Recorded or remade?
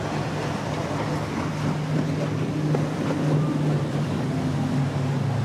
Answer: recorded